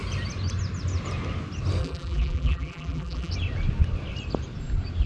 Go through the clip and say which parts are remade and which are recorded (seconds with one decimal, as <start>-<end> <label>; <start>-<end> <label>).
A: 0.0-1.8 recorded; 1.8-3.3 remade; 3.3-5.1 recorded